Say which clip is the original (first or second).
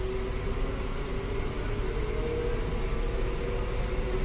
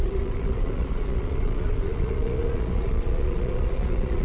first